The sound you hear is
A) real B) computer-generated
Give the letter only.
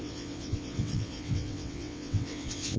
B